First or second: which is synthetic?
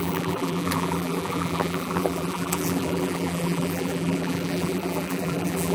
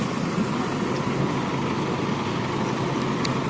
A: first